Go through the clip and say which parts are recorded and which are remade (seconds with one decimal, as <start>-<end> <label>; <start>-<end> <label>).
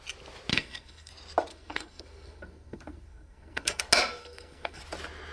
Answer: 0.0-0.5 recorded; 0.5-1.1 remade; 1.1-1.5 recorded; 1.5-3.8 remade; 3.8-4.2 recorded; 4.2-4.8 remade; 4.8-5.3 recorded